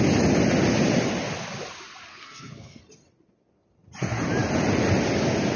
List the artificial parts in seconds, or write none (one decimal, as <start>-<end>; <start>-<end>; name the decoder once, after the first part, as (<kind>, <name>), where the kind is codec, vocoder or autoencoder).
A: 2.1-2.8 (codec, SNAC)